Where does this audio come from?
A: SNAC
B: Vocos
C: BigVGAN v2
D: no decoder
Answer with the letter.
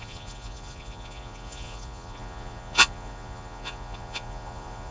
B